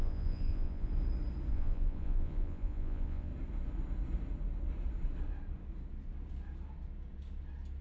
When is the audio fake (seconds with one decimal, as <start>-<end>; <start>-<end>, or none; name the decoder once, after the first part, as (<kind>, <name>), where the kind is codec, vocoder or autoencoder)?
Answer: 0.0-0.9 (vocoder, Vocos); 1.5-3.3